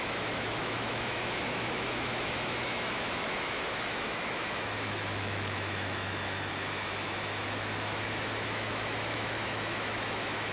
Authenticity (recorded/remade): remade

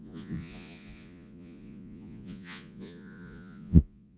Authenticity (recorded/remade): remade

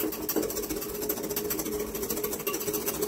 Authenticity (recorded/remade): recorded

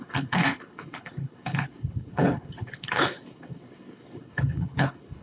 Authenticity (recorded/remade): remade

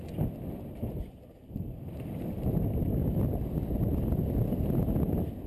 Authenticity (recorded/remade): recorded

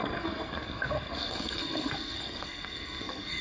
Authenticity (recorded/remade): remade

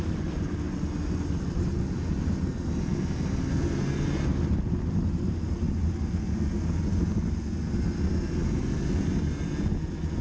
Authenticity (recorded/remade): recorded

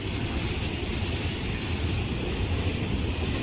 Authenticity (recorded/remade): recorded